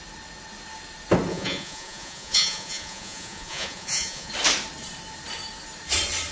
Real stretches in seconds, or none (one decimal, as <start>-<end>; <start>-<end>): 0.0-1.3; 4.3-6.3